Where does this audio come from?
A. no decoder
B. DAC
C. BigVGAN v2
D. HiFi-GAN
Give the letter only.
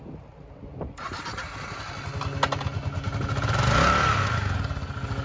A